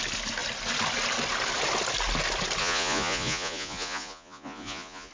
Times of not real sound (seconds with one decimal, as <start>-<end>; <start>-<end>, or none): 2.6-5.1